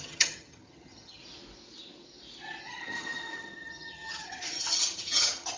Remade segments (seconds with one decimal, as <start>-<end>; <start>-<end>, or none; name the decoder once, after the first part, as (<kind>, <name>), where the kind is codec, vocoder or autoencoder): 0.0-1.2 (vocoder, HiFi-GAN); 2.6-5.6